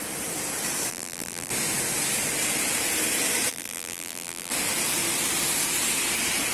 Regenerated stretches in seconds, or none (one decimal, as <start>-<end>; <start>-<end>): 0.9-1.5; 3.5-4.5